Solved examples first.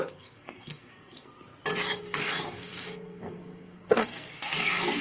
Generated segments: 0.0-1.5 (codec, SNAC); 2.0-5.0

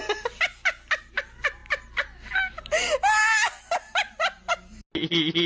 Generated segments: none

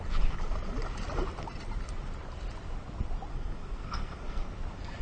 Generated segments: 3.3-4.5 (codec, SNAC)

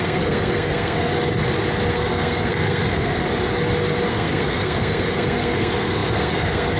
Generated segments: 0.0-1.1 (codec, SNAC); 1.9-3.2; 4.1-6.8

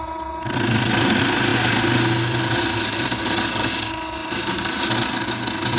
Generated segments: none